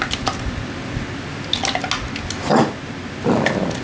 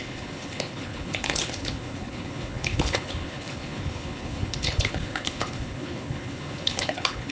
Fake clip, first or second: second